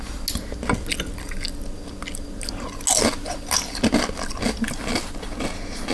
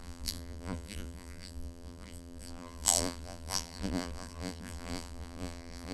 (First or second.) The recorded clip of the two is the first